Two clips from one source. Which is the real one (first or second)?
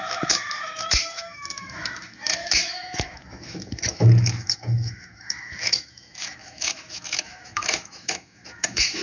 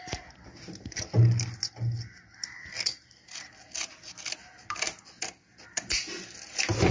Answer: second